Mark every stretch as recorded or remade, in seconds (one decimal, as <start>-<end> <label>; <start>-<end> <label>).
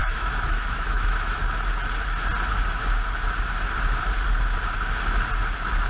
0.0-1.4 remade; 1.4-5.9 recorded